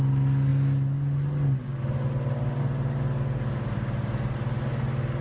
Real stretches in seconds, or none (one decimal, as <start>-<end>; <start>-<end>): 0.0-5.2